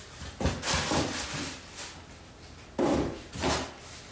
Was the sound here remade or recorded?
recorded